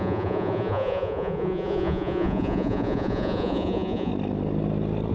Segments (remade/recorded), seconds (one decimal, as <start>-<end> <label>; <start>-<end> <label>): 0.0-4.1 remade; 4.1-5.1 recorded